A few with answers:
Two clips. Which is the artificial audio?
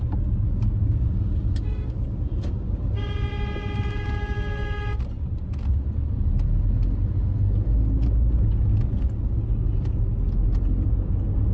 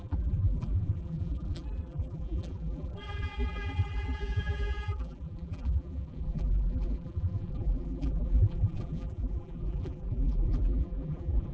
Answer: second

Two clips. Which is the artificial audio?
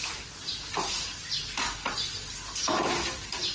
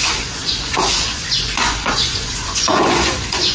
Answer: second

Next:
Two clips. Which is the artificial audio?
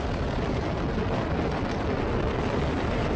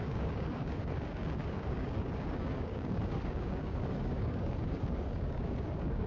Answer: second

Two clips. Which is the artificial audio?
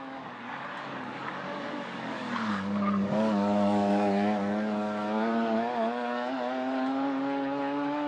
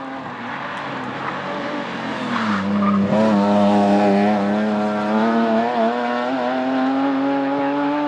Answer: first